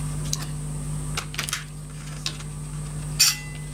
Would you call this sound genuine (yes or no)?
yes